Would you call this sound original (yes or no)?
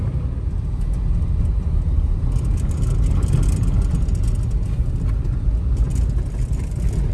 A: yes